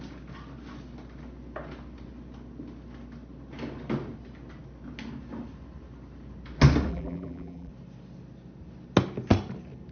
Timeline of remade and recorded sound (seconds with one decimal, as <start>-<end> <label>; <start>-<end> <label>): 0.0-6.9 recorded; 6.9-7.7 remade; 7.7-9.9 recorded

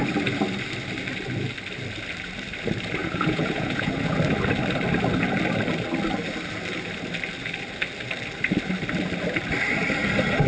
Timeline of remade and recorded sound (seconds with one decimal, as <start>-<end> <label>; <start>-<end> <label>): 0.0-3.0 recorded; 3.0-4.2 remade; 4.2-10.5 recorded

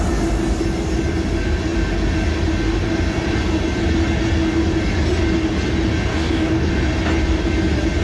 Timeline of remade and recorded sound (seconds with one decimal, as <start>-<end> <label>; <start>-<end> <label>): 0.0-6.1 recorded; 6.1-6.7 remade; 6.7-8.0 recorded

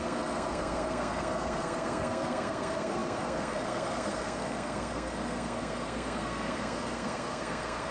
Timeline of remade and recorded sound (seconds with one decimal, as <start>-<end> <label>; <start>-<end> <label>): 0.0-7.9 remade